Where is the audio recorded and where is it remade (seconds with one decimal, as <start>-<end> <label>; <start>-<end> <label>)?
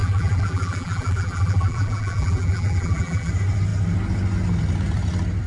0.0-3.3 remade; 3.3-5.5 recorded